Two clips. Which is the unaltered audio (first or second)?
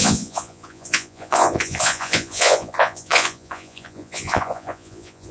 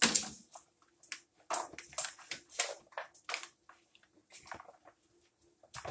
second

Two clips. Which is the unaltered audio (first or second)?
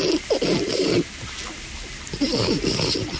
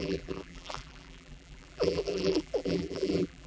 first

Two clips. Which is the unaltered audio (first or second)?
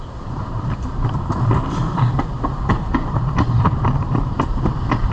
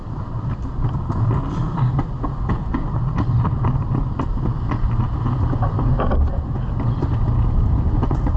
second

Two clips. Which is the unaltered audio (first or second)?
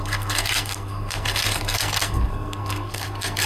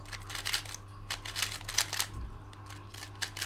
second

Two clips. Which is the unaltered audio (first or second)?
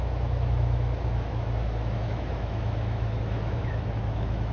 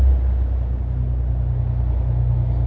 second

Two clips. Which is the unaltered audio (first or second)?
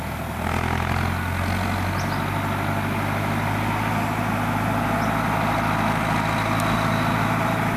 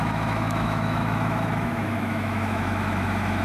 first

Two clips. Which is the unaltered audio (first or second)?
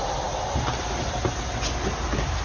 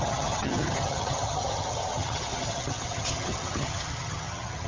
first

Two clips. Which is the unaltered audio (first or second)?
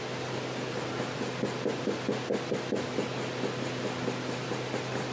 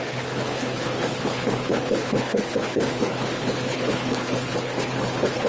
first